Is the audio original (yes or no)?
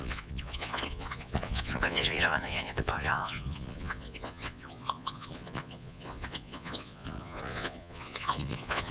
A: no